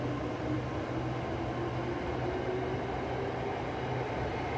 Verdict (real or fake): real